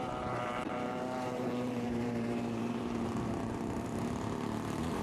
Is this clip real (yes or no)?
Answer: no